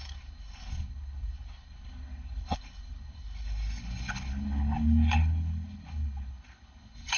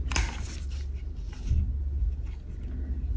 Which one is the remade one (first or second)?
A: first